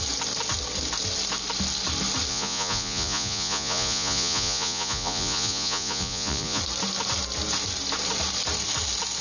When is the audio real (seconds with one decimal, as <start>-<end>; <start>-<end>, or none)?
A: 0.0-2.3; 6.6-9.2